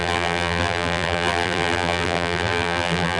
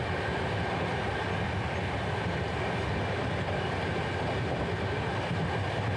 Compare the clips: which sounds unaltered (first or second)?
second